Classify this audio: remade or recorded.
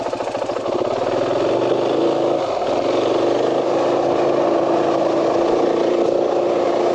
recorded